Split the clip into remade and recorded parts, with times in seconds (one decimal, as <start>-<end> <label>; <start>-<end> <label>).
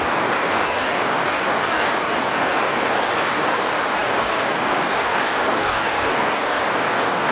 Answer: 0.0-7.3 remade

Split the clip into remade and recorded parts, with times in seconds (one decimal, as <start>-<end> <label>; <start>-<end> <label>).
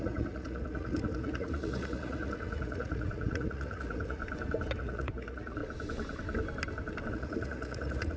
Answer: 0.0-4.2 remade; 4.2-4.8 recorded; 4.8-5.6 remade; 5.6-7.1 recorded; 7.1-8.2 remade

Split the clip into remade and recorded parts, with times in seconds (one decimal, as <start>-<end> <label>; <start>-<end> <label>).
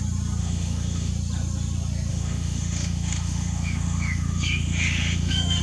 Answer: 0.0-0.4 recorded; 0.4-1.1 remade; 1.1-2.1 recorded; 2.1-5.6 remade